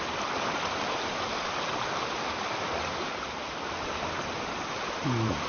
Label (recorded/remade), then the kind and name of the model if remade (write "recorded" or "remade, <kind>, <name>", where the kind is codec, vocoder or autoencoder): remade, vocoder, BigVGAN v2